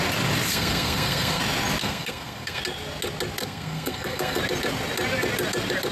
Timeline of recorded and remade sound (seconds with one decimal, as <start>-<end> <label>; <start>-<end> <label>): 0.0-0.5 recorded; 0.5-1.4 remade; 1.4-1.8 recorded; 1.8-2.6 remade; 2.6-3.4 recorded; 3.4-4.4 remade; 4.4-5.9 recorded